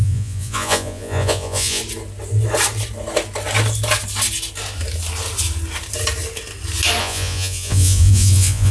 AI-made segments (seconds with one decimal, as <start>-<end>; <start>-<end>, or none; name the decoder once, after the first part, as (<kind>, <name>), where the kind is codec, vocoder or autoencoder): 0.0-1.8 (vocoder, Vocos); 7.0-8.7